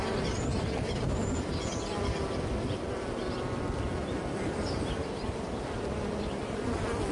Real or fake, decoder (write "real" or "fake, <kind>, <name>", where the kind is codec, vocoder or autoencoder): real